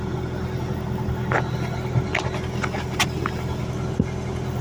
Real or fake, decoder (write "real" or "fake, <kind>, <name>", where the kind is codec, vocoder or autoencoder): real